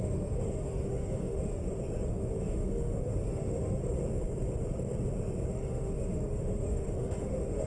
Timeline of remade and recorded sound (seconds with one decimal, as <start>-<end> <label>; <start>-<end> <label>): 0.0-1.6 remade; 1.6-2.1 recorded; 2.1-3.8 remade; 3.8-5.5 recorded; 5.5-7.7 remade